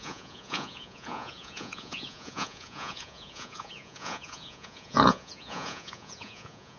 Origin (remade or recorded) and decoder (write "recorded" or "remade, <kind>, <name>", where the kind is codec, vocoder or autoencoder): remade, vocoder, Vocos